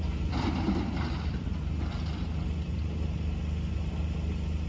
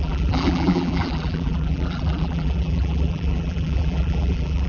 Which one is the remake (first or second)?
second